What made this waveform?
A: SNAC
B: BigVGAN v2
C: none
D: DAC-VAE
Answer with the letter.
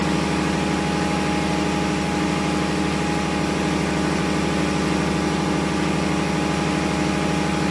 C